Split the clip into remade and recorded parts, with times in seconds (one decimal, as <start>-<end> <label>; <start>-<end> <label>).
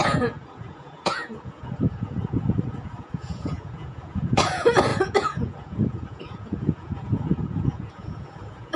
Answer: 0.0-8.8 remade